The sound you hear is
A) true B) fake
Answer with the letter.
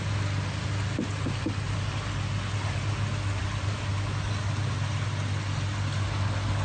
A